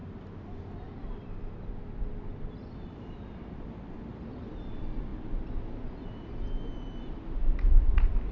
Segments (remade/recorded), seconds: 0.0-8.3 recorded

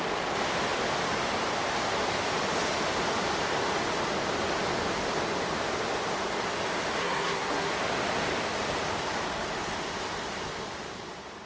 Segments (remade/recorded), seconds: 0.0-7.0 recorded; 7.0-7.7 remade; 7.7-11.5 recorded